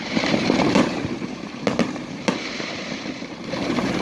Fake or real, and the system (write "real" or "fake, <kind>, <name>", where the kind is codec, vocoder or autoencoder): fake, vocoder, BigVGAN v2